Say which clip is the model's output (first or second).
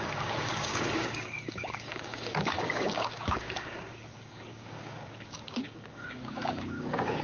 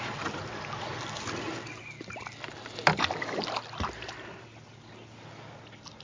first